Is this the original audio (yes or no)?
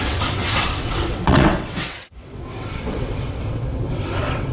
no